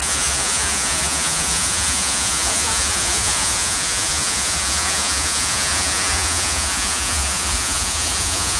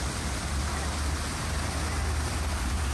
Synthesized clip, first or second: first